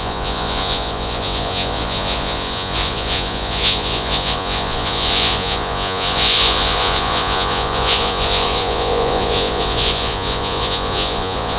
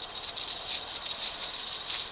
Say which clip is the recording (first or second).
second